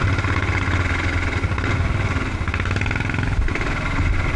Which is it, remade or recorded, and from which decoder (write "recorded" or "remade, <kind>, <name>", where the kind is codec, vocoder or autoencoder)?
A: recorded